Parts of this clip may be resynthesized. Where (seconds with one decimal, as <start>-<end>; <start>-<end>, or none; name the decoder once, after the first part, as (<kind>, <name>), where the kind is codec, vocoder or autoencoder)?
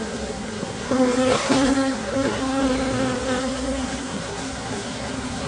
0.0-2.6 (codec, SNAC); 3.4-5.5